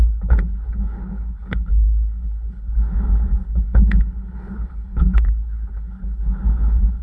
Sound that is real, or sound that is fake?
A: fake